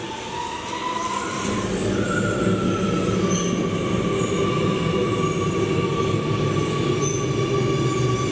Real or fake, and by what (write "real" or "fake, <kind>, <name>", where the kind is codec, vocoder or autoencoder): real